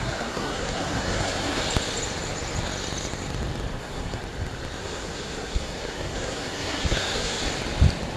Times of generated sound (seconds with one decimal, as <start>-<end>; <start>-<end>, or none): 0.0-1.6; 3.8-4.2; 4.8-7.4